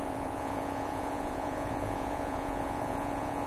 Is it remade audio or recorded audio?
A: remade